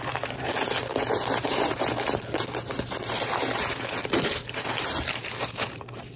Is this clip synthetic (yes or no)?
yes